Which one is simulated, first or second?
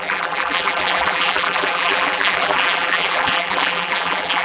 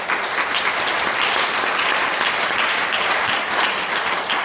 first